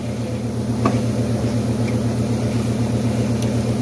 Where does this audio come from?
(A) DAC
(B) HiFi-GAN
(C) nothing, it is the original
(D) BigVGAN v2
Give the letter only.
C